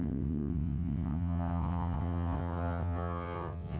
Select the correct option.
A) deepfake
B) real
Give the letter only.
A